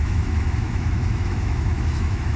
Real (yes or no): no